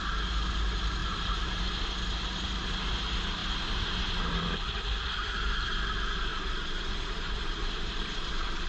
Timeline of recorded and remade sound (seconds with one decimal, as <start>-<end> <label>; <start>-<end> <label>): 0.0-1.0 recorded; 1.0-1.6 remade; 1.6-3.4 recorded; 3.4-4.3 remade; 4.3-6.3 recorded; 6.3-8.7 remade